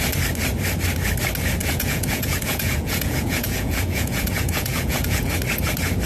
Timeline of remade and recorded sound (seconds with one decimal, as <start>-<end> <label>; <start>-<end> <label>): 0.0-1.6 recorded; 1.6-5.3 remade; 5.3-6.1 recorded